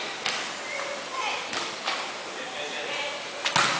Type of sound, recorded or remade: recorded